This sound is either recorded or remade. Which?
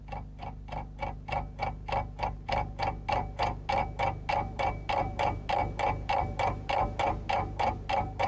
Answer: recorded